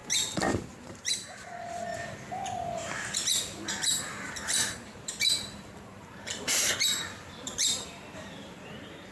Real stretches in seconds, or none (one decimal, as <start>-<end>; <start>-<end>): 0.0-0.5; 1.9-3.7